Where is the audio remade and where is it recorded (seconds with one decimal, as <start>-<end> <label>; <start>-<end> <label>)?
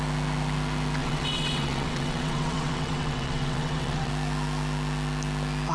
0.0-1.0 recorded; 1.0-4.1 remade; 4.1-5.7 recorded